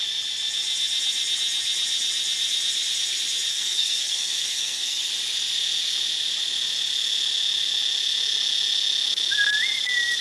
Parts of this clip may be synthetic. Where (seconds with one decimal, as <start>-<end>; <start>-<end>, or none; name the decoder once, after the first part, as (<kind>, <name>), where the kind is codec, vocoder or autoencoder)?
3.5-5.1 (codec, SNAC)

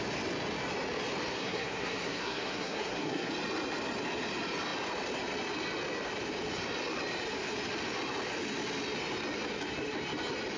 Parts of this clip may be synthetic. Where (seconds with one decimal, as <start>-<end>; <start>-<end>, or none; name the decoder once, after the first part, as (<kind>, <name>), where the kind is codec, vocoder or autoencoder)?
1.3-3.3 (codec, SNAC)

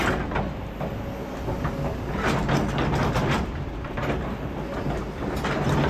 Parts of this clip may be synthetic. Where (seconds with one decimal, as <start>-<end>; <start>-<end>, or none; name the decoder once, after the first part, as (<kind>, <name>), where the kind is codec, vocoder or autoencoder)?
none

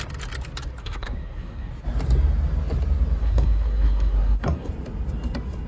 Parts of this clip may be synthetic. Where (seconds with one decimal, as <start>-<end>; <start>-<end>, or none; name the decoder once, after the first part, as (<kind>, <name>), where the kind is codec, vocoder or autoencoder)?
0.8-1.7 (codec, SNAC); 3.2-4.7

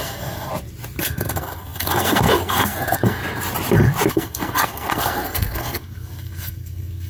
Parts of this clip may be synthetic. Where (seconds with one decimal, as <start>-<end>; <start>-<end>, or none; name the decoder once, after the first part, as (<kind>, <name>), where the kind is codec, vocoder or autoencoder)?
0.0-0.5 (codec, SNAC); 1.0-3.2; 4.1-7.1

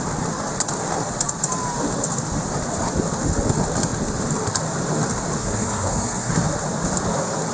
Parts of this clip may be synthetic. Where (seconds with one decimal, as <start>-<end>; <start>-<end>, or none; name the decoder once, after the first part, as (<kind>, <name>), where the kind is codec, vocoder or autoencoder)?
5.4-6.3 (codec, SNAC)

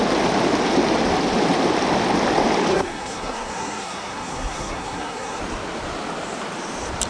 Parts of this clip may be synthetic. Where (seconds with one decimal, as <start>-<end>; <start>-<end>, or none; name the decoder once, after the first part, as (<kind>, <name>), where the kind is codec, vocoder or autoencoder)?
2.7-5.4 (codec, SNAC)

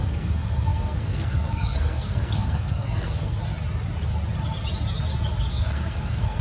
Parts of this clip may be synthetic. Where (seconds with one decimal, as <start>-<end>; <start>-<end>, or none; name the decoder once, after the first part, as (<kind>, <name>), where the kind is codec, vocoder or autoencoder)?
0.0-3.4 (codec, SNAC); 5.5-6.4